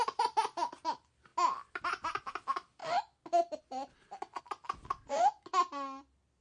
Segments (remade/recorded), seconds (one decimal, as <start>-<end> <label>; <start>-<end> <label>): 0.0-6.4 recorded